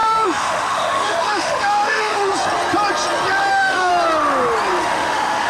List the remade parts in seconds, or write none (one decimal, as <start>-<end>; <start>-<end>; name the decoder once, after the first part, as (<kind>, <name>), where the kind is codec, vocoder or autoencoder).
0.0-2.3 (autoencoder, DAC-VAE); 3.5-3.9; 4.8-5.5